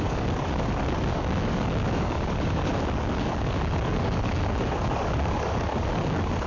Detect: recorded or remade remade